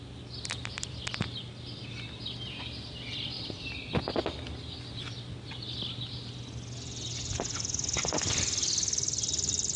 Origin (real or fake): real